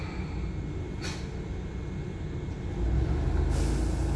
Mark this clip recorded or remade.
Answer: recorded